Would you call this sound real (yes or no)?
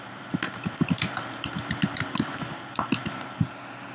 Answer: no